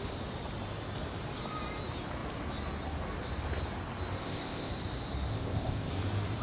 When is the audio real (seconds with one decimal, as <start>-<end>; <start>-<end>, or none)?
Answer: 0.0-4.2; 4.7-5.3; 5.9-6.4